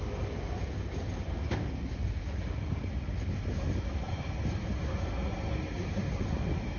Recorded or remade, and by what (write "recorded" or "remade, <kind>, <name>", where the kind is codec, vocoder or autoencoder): recorded